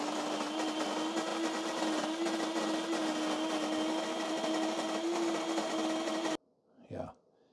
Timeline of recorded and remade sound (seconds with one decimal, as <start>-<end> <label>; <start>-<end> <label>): 0.0-7.5 recorded